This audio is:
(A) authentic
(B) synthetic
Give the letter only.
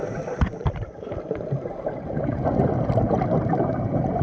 B